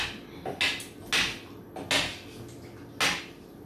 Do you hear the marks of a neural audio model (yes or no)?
no